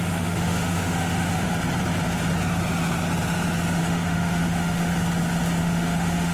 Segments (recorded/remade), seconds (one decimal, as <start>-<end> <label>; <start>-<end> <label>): 0.0-1.5 remade; 1.5-3.8 recorded; 3.8-4.9 remade; 4.9-5.6 recorded; 5.6-6.3 remade